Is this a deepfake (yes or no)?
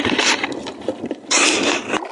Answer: no